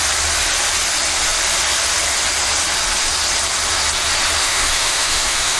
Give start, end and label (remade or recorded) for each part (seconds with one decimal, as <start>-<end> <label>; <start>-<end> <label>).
0.0-4.4 recorded; 4.4-5.6 remade

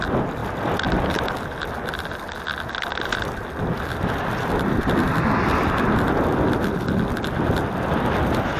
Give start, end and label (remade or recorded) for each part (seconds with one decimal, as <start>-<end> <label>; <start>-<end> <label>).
0.0-8.6 recorded

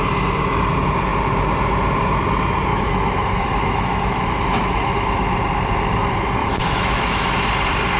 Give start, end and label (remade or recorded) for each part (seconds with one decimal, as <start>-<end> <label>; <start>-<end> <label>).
0.0-2.7 recorded; 2.7-4.9 remade; 4.9-6.4 recorded; 6.4-7.4 remade; 7.4-8.0 recorded

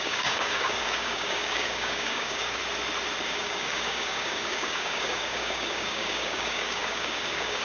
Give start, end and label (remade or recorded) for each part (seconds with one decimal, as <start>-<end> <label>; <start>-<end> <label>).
0.0-2.6 remade; 2.6-3.2 recorded; 3.2-7.6 remade